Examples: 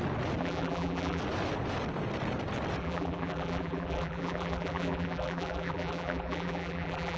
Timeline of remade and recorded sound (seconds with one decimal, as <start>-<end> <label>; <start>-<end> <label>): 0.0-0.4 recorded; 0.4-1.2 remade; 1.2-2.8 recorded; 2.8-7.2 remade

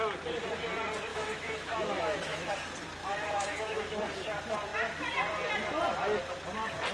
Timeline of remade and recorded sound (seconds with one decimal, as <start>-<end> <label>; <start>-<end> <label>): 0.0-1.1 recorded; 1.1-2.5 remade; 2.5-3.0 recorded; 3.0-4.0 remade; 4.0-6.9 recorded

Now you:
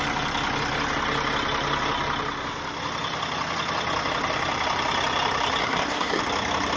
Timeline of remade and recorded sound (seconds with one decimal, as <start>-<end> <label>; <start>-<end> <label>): 0.0-5.6 recorded; 5.6-6.2 remade; 6.2-6.8 recorded

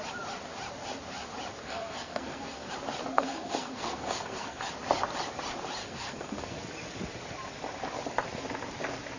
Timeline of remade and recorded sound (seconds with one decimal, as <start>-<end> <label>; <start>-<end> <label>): 0.0-1.6 recorded; 1.6-2.7 remade; 2.7-3.1 recorded; 3.1-4.6 remade; 4.6-5.8 recorded; 5.8-6.6 remade; 6.6-9.2 recorded